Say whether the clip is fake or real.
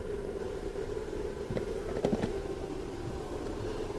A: fake